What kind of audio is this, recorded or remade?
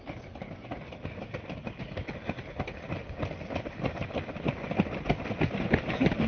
recorded